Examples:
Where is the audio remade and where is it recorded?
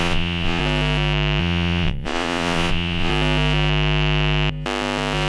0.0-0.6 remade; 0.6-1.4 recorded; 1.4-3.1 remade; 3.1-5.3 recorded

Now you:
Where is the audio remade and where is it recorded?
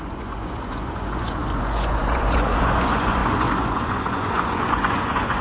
0.0-5.4 remade